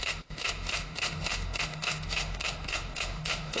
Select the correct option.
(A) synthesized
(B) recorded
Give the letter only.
A